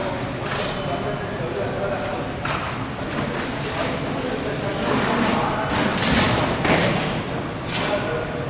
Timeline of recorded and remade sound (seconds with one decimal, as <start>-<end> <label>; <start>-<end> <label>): 0.0-5.9 recorded; 5.9-7.0 remade; 7.0-8.5 recorded